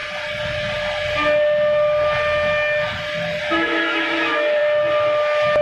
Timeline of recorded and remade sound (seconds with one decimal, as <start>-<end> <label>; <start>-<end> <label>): 0.0-3.4 recorded; 3.4-4.6 remade; 4.6-5.6 recorded